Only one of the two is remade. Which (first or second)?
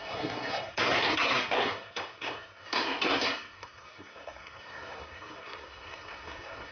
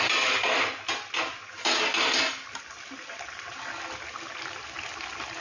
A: first